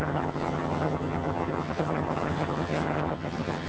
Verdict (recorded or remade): remade